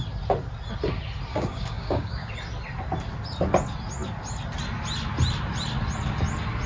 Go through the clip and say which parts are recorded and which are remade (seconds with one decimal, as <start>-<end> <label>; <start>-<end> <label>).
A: 0.0-1.3 recorded; 1.3-2.3 remade; 2.3-6.7 recorded

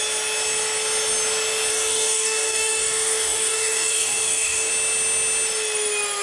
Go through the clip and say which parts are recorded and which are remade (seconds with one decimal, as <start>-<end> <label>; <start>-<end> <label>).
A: 0.0-1.7 recorded; 1.7-4.7 remade; 4.7-6.2 recorded